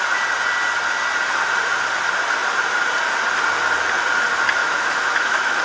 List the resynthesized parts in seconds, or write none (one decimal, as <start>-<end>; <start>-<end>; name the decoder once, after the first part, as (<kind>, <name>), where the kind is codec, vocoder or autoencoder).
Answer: 4.6-5.6 (autoencoder, DAC-VAE)